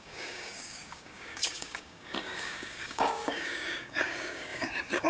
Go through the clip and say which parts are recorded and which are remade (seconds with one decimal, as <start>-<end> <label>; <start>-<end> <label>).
0.0-5.1 remade